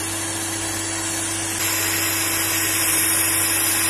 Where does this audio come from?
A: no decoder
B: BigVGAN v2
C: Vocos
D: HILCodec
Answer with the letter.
A